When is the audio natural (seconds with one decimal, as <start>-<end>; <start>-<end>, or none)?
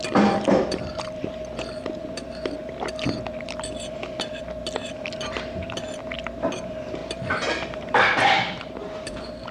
none